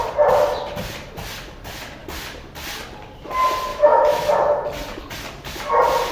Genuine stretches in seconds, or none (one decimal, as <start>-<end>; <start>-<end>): 0.0-3.7; 4.3-6.1